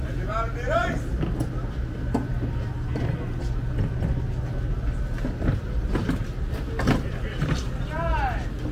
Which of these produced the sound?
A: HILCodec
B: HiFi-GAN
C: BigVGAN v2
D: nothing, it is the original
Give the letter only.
D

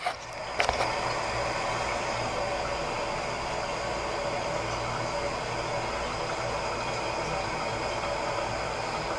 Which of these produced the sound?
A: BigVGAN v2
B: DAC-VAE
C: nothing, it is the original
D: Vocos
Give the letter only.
C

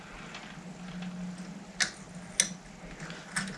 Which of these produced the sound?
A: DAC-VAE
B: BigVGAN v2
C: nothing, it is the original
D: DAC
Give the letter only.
C